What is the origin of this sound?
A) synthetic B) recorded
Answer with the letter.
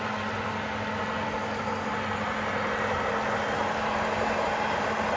B